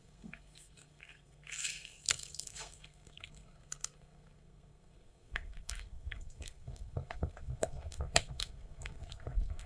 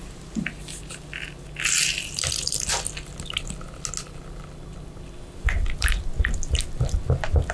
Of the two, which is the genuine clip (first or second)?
second